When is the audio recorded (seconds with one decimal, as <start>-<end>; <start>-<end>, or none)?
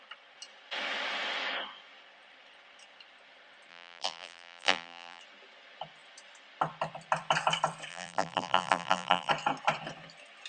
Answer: 0.0-3.7; 5.2-7.9; 9.3-10.5